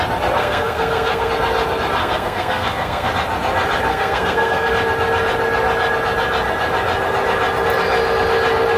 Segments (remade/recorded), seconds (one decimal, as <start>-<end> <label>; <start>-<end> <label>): 0.0-0.4 recorded; 0.4-1.3 remade; 1.3-2.0 recorded; 2.0-3.1 remade; 3.1-3.9 recorded; 3.9-4.7 remade; 4.7-8.8 recorded